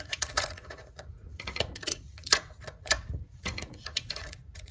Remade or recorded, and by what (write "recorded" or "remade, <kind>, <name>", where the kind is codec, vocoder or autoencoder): remade, vocoder, Vocos